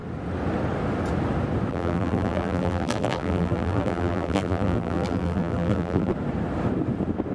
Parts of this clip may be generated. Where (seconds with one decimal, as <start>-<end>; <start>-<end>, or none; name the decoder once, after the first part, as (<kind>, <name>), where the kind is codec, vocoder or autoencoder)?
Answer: 1.7-6.1 (vocoder, BigVGAN v2)